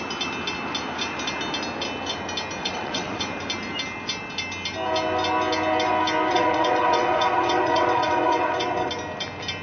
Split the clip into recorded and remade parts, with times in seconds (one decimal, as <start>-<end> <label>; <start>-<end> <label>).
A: 0.0-2.6 recorded; 2.6-3.2 remade; 3.2-6.3 recorded; 6.3-8.9 remade; 8.9-9.6 recorded